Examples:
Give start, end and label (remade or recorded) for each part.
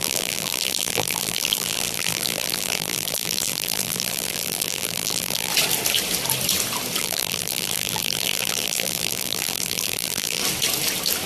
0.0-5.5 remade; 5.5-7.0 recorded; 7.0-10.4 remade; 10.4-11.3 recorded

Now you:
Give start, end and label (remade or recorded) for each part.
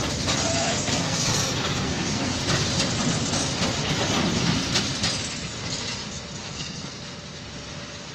0.0-0.5 recorded; 0.5-2.4 remade; 2.4-6.4 recorded; 6.4-7.0 remade; 7.0-8.1 recorded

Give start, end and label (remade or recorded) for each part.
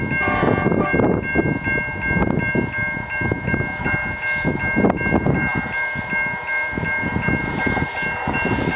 0.0-8.8 recorded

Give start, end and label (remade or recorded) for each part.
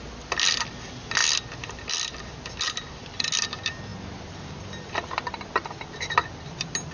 0.0-6.9 recorded